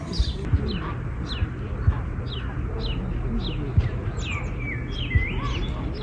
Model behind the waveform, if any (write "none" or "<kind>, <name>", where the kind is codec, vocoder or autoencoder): none